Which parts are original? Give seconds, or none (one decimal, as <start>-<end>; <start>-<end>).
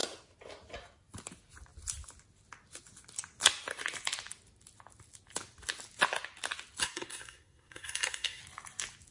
0.0-6.8; 8.4-9.1